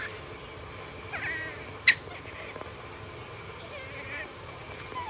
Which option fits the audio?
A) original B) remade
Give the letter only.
A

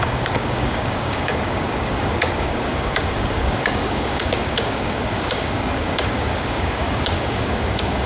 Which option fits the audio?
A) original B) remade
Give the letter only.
B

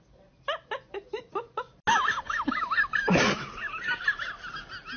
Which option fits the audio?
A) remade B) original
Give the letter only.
B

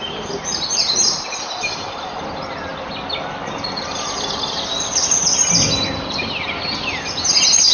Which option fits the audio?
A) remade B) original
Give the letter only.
B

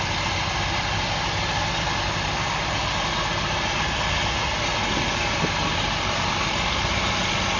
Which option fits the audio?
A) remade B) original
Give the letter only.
B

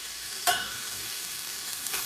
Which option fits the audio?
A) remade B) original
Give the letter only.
A